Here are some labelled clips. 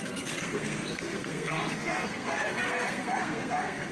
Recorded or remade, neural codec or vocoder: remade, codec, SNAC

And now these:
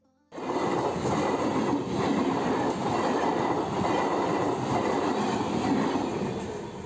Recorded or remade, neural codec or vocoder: recorded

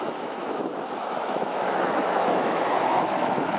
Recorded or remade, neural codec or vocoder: remade, autoencoder, DAC-VAE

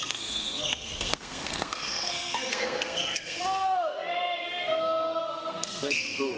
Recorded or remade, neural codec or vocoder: remade, codec, SNAC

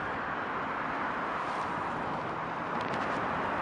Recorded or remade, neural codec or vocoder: remade, vocoder, BigVGAN v2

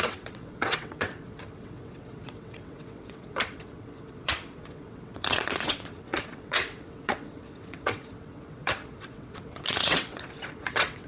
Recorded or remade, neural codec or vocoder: remade, vocoder, WaveNeXt